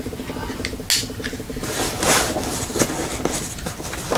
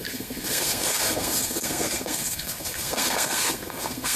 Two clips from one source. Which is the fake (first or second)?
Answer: second